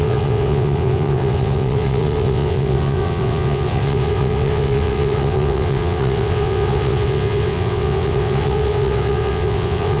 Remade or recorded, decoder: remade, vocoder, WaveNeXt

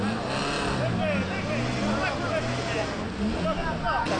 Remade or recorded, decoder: recorded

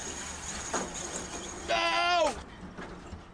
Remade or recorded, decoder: recorded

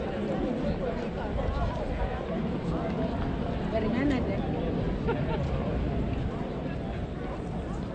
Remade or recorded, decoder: recorded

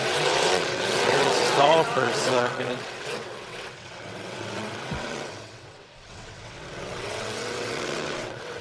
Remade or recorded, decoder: remade, vocoder, WaveNeXt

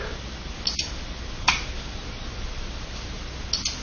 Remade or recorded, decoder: recorded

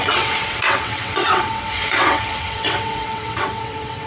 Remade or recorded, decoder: remade, vocoder, WaveNeXt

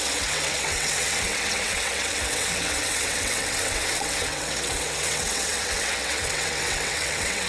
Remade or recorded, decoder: remade, vocoder, WaveNeXt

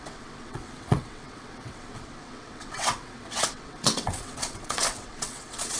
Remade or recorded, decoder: remade, vocoder, WaveNeXt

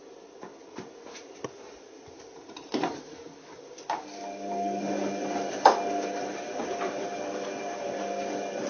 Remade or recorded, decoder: recorded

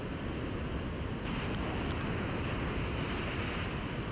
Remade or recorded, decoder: recorded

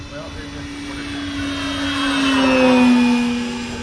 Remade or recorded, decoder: recorded